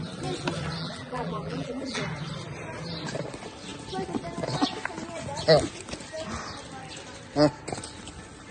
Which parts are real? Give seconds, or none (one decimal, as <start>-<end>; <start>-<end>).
0.0-0.8; 2.0-8.5